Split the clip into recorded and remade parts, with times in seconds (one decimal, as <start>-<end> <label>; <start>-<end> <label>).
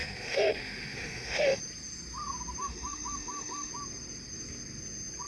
0.0-1.6 remade; 1.6-2.6 recorded; 2.6-3.7 remade; 3.7-5.3 recorded